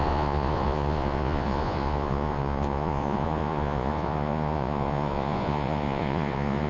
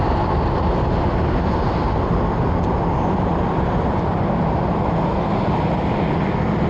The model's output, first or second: first